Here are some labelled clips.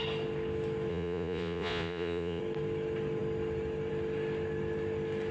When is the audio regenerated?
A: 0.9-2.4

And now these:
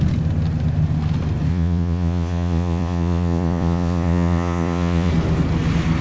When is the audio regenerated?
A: 1.5-5.1

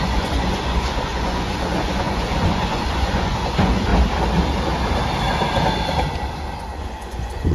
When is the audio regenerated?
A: 0.0-3.9; 6.8-7.5